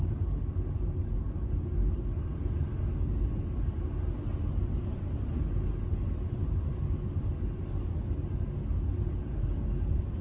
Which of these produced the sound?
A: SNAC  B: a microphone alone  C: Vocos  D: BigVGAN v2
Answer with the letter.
B